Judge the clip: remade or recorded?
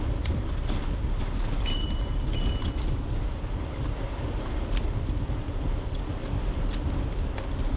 recorded